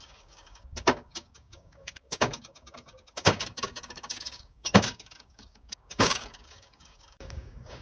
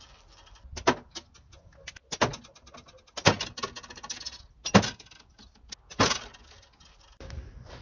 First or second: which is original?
second